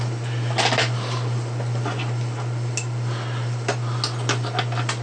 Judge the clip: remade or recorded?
recorded